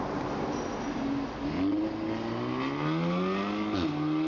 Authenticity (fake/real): real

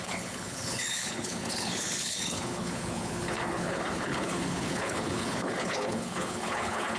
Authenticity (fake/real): fake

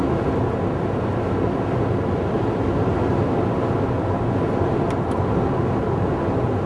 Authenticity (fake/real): real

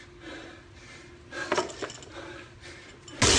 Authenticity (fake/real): real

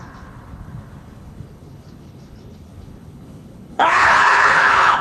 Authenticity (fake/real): fake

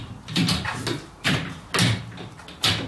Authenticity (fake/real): real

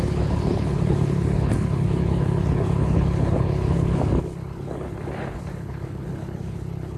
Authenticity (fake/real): fake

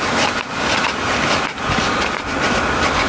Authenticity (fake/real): real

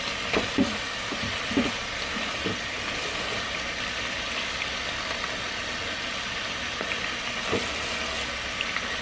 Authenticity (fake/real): real